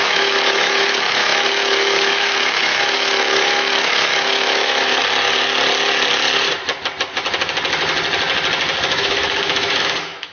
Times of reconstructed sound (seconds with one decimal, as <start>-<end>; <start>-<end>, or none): 0.0-5.0; 8.8-10.3